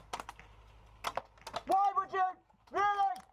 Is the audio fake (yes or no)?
no